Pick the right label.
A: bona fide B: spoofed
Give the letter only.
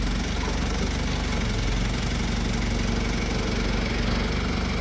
A